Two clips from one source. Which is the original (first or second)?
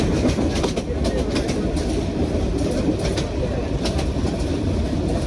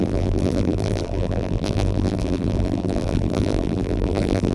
first